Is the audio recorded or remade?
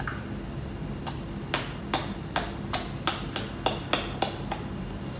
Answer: recorded